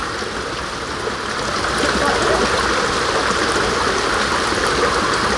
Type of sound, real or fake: real